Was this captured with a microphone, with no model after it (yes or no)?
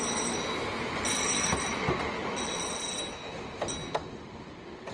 yes